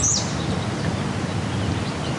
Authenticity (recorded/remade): recorded